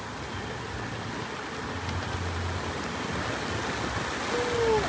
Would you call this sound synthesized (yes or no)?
no